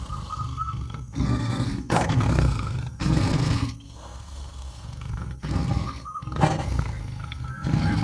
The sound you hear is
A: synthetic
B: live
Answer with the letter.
A